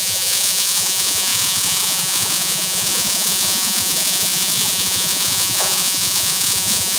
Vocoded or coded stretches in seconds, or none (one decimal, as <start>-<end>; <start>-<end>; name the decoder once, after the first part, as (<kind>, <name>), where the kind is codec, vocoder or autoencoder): 0.0-7.0 (vocoder, Vocos)